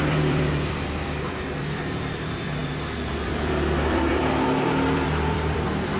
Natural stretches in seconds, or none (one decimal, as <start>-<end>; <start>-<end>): none